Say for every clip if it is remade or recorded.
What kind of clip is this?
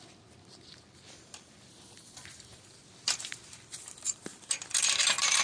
remade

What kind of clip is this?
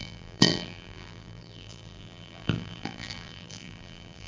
remade